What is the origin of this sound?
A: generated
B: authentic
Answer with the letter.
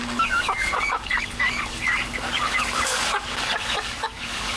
A